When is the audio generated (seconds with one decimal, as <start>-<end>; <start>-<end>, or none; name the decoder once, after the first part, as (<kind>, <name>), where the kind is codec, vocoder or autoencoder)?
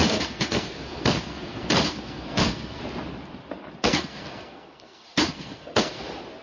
0.0-2.8 (codec, SNAC); 3.8-6.0